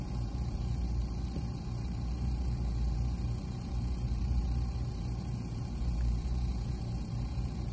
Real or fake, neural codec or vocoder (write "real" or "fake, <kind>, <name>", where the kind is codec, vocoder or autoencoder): fake, vocoder, BigVGAN v2